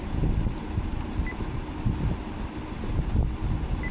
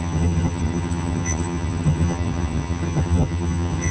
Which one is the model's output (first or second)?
second